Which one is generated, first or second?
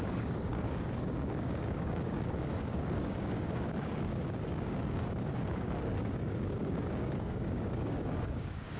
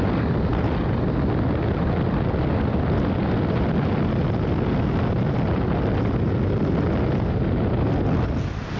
first